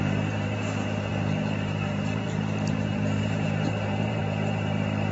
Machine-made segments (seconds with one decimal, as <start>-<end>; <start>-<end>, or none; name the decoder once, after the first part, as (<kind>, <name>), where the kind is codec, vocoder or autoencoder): 0.0-5.1 (vocoder, BigVGAN v2)